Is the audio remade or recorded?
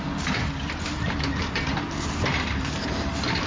remade